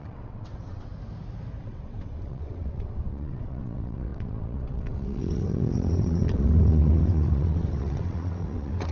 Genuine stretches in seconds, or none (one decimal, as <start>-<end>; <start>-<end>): 0.9-1.6